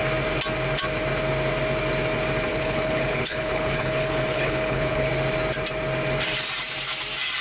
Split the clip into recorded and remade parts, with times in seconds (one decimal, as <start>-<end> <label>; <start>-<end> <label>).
0.0-2.5 recorded; 2.5-5.1 remade; 5.1-7.4 recorded